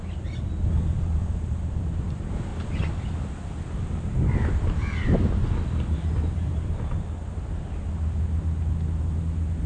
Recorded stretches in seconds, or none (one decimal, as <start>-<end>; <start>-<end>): 0.0-9.7